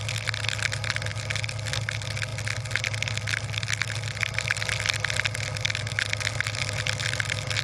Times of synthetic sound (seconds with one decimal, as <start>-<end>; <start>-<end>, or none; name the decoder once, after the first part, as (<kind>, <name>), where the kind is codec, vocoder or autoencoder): none